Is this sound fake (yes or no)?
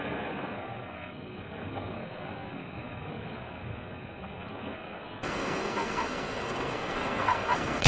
yes